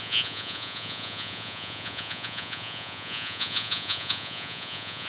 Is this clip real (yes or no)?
no